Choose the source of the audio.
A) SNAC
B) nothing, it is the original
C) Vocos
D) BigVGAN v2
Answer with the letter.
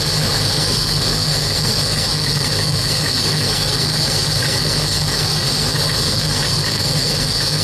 A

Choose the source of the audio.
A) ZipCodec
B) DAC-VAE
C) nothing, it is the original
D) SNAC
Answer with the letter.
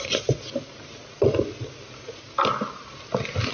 C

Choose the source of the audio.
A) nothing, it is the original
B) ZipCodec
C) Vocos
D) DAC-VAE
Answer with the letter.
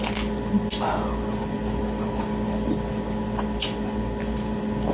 A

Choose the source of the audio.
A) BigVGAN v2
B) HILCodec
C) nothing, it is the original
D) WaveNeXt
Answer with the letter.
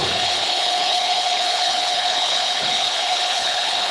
B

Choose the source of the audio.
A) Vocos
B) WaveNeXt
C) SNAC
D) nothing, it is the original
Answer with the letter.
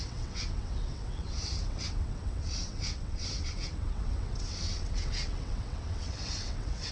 B